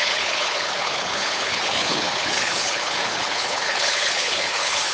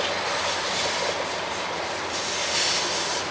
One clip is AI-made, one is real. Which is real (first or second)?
second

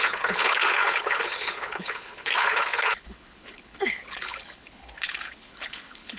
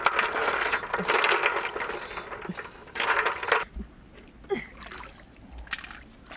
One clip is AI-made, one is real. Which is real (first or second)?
second